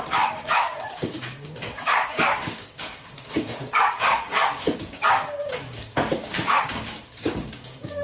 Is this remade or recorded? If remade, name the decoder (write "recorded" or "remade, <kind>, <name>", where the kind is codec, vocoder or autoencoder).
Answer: remade, codec, DAC